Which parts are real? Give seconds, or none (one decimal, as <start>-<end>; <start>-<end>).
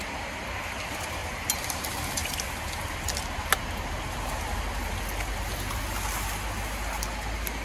0.0-1.2; 1.8-7.6